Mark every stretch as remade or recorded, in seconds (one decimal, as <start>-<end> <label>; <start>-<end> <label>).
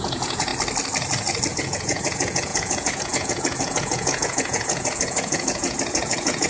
0.0-0.5 remade; 0.5-1.5 recorded; 1.5-6.5 remade